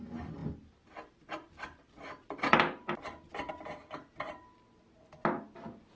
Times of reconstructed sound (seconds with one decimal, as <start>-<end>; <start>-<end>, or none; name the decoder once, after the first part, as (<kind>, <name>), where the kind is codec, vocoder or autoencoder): 0.4-3.5 (vocoder, BigVGAN v2)

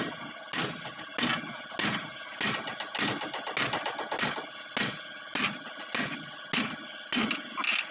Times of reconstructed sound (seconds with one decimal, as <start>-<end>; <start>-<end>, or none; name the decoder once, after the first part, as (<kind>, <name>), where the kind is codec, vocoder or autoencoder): none

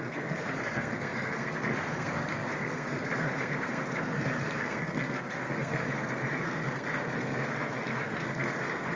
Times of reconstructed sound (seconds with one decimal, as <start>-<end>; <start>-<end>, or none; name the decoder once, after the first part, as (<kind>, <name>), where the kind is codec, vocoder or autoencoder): 0.0-8.9 (codec, SNAC)

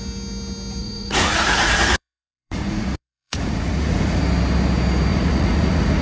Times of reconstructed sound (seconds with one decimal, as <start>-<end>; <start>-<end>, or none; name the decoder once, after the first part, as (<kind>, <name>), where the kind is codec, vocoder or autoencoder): 0.8-4.2 (vocoder, Vocos); 5.1-6.0

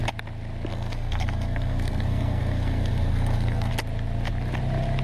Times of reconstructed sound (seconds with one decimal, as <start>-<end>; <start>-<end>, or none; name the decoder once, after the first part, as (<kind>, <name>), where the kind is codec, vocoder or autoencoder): 0.7-3.7 (codec, SNAC)

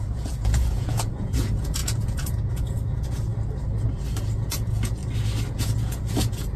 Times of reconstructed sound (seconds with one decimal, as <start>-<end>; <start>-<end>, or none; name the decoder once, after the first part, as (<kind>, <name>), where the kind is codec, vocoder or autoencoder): 0.0-3.3 (vocoder, Vocos); 4.5-5.0; 5.5-6.6

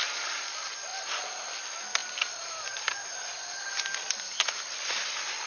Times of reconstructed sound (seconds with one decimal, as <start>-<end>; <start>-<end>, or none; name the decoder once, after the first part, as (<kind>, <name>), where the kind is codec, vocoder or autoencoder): none